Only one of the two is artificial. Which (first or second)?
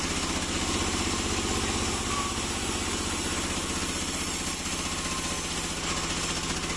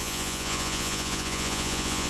second